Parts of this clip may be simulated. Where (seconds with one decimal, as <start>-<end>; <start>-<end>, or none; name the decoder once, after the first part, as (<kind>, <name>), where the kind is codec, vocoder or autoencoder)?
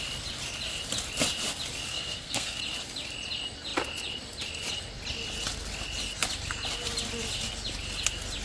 1.9-2.6 (codec, SNAC)